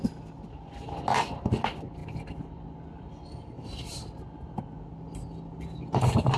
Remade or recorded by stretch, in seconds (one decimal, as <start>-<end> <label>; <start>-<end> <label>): 0.0-6.4 recorded